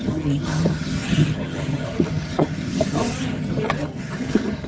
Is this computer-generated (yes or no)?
yes